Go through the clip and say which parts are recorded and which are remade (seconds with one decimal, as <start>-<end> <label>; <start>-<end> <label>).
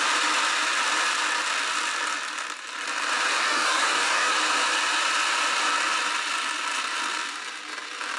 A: 0.0-3.4 recorded; 3.4-4.3 remade; 4.3-8.2 recorded